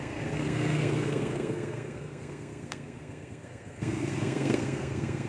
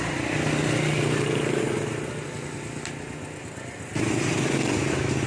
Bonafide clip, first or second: second